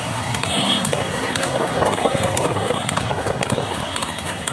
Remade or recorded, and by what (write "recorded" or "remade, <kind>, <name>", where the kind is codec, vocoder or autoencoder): remade, codec, SNAC